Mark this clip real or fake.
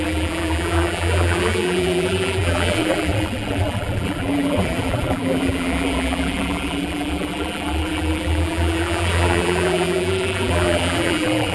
fake